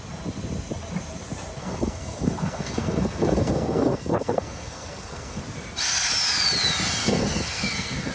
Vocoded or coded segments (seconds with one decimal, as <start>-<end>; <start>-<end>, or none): 1.6-5.4; 7.0-8.1

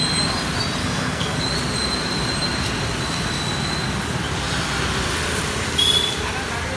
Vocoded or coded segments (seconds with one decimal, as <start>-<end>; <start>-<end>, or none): 0.8-1.4

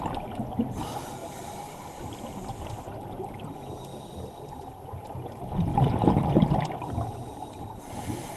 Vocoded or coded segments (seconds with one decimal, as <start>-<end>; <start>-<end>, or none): none

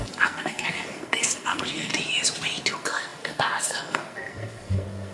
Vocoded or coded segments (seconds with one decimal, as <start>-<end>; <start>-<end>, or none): 0.0-1.9; 2.7-5.1

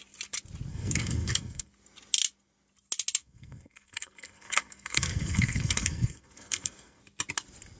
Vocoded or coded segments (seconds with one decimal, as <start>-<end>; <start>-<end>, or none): 0.7-1.7; 3.2-7.0

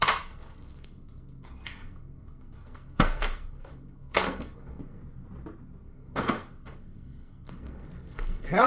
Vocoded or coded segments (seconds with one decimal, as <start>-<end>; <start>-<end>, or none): 0.0-5.0; 5.8-8.7

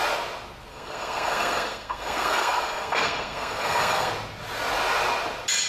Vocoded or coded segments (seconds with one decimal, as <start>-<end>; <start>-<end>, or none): 0.7-4.1